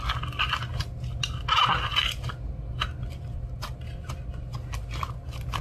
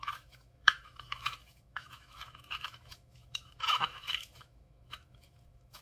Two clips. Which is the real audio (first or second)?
first